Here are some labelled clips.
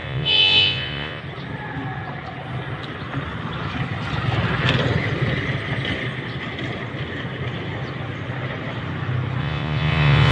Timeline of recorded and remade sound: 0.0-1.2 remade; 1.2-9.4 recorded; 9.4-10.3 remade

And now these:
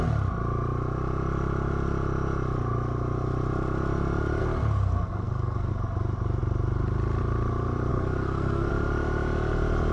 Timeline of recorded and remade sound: 0.0-4.4 recorded; 4.4-5.7 remade; 5.7-7.9 recorded; 7.9-8.7 remade; 8.7-9.9 recorded

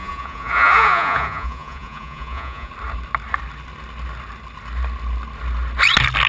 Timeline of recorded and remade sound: 0.0-2.7 remade; 2.7-6.3 recorded

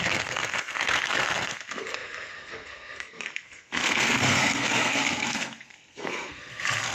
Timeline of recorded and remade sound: 0.0-6.9 remade